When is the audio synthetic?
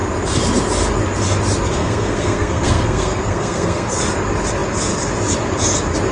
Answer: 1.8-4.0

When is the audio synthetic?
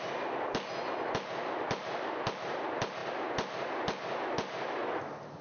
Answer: none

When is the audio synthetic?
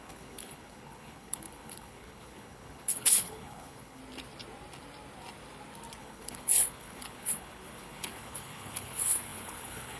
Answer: 0.0-4.0; 6.0-10.0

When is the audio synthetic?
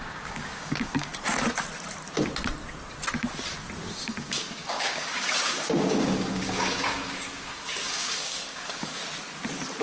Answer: 0.0-1.1; 3.8-9.0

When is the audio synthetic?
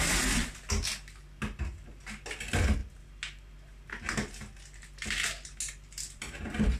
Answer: none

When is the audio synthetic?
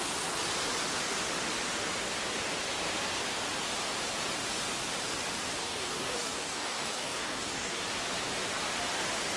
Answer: 5.6-7.8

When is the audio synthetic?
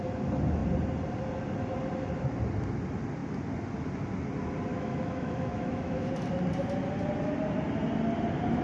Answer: 4.7-6.1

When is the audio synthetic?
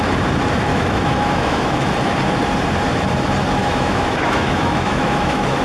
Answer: 0.7-1.9; 3.6-5.6